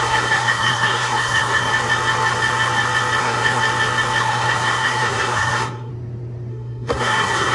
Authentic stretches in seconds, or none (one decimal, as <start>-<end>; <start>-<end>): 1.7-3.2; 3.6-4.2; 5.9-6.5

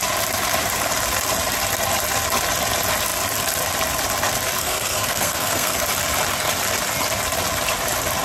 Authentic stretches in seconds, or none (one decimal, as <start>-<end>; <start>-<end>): 0.0-4.6; 5.8-8.2

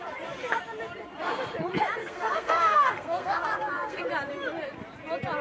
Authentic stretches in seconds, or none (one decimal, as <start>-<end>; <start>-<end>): 0.0-2.0; 4.0-5.4

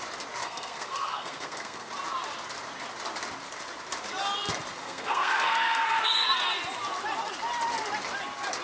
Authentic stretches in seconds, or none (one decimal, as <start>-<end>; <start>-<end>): 0.0-0.4; 1.9-4.8; 6.4-8.6

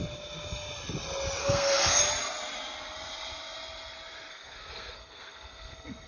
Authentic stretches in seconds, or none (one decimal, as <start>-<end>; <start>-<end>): 0.0-1.4; 2.0-4.3

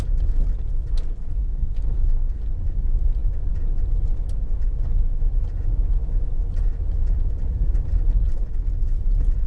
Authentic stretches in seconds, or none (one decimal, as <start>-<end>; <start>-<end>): 0.0-1.4; 2.4-9.5